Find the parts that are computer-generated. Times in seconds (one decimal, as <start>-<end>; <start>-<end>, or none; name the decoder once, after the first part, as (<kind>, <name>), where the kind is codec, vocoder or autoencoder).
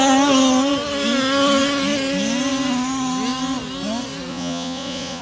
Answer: 4.3-5.2 (vocoder, Vocos)